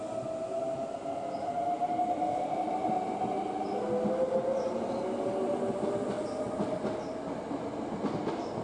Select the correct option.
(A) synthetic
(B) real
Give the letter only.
B